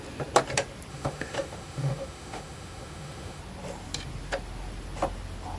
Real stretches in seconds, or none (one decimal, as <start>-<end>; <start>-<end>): 0.0-0.9; 3.4-5.6